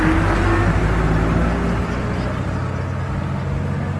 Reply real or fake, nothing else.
real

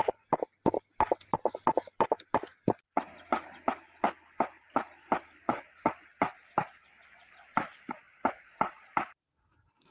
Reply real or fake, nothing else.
real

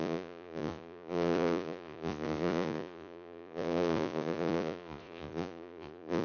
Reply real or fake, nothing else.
fake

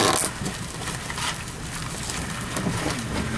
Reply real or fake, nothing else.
real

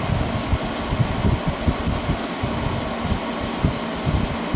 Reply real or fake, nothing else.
real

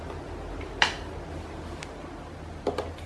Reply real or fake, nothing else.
real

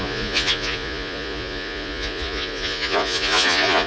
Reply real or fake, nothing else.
fake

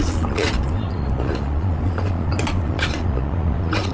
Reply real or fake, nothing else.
fake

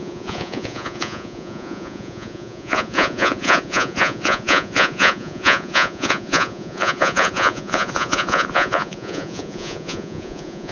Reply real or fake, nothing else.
fake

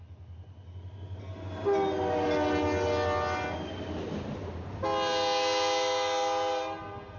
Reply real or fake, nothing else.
real